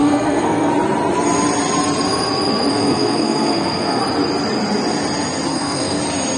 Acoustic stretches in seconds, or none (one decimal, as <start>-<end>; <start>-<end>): 0.7-2.7; 4.0-5.5; 6.0-6.4